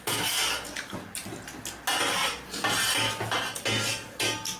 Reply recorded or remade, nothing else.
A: recorded